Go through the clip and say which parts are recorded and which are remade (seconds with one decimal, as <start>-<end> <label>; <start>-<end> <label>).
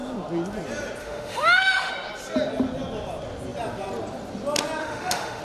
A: 0.0-1.0 recorded; 1.0-1.9 remade; 1.9-4.8 recorded; 4.8-5.4 remade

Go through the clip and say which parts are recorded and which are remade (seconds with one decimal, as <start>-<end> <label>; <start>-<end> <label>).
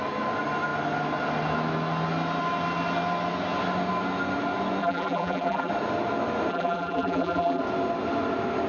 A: 0.0-4.8 recorded; 4.8-5.7 remade; 5.7-6.5 recorded; 6.5-7.6 remade; 7.6-8.7 recorded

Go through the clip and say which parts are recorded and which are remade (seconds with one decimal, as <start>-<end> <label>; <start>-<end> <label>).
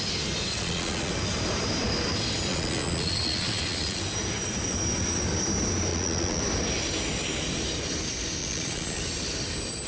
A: 0.0-0.5 recorded; 0.5-1.1 remade; 1.1-2.5 recorded; 2.5-4.0 remade; 4.0-5.9 recorded; 5.9-6.4 remade; 6.4-8.4 recorded; 8.4-9.0 remade; 9.0-9.9 recorded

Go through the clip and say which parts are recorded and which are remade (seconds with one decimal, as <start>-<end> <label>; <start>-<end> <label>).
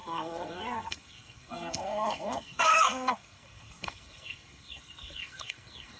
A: 0.0-6.0 remade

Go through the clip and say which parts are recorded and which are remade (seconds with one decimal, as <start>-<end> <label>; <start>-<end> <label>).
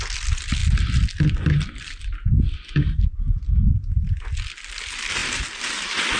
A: 0.0-6.2 recorded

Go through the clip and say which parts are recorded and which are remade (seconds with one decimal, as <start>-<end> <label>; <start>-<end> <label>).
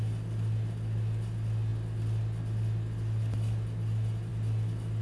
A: 0.0-5.0 recorded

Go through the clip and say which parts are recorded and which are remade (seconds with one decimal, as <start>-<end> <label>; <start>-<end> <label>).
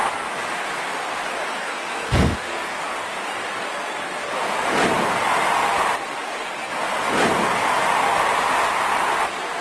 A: 0.0-1.6 recorded; 1.6-2.8 remade; 2.8-9.6 recorded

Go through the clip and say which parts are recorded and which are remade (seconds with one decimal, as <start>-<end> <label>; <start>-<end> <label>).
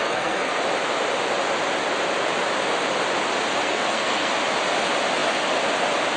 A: 0.0-0.6 remade; 0.6-3.6 recorded; 3.6-4.3 remade; 4.3-6.2 recorded